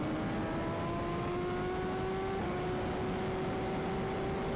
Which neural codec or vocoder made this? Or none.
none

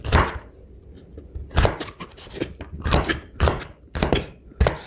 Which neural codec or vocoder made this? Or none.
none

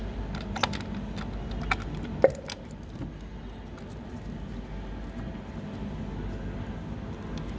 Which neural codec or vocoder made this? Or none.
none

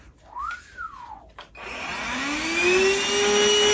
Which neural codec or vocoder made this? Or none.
none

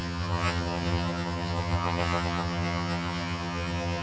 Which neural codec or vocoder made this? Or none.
vocoder, HiFi-GAN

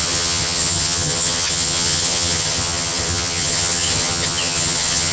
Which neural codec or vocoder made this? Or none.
vocoder, HiFi-GAN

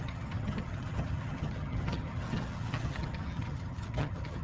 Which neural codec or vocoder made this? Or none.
vocoder, HiFi-GAN